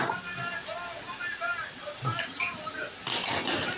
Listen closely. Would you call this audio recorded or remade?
recorded